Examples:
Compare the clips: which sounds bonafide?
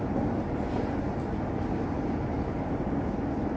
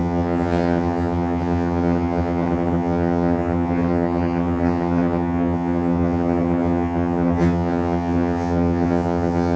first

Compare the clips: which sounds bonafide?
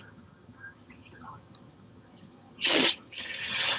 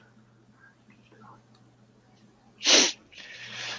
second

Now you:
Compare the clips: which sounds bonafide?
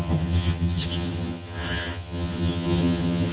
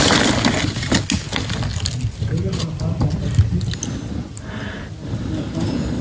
second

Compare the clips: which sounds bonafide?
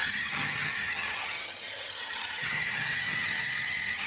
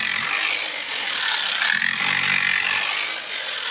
second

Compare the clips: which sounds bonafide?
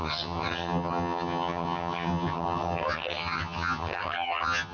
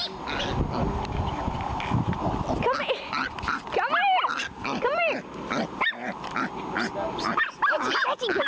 second